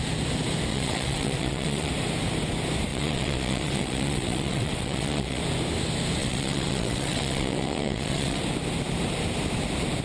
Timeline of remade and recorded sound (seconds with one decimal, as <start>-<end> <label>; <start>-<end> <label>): 0.0-0.7 recorded; 0.7-1.9 remade; 1.9-2.9 recorded; 2.9-5.4 remade; 5.4-6.2 recorded; 6.2-8.4 remade; 8.4-10.0 recorded

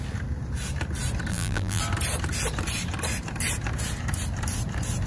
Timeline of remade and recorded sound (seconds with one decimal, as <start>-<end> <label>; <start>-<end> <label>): 0.0-1.3 recorded; 1.3-1.8 remade; 1.8-5.1 recorded